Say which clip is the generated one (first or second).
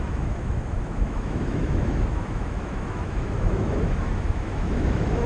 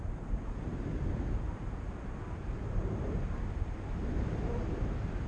first